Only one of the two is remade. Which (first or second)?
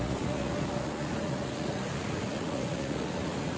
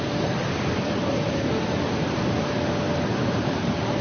first